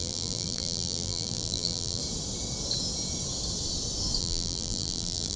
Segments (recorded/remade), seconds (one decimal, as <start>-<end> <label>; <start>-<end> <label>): 0.0-2.0 remade; 2.0-4.2 recorded; 4.2-5.4 remade